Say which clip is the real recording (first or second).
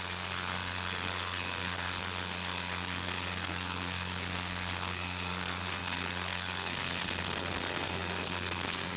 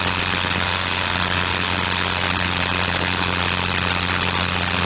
second